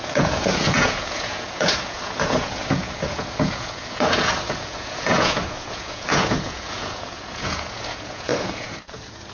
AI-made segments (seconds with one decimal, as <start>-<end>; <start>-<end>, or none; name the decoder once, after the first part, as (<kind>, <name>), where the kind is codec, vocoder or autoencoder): 0.0-9.3 (vocoder, Vocos)